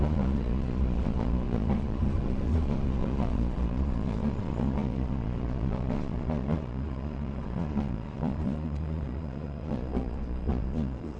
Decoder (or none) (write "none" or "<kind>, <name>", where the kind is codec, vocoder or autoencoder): vocoder, Vocos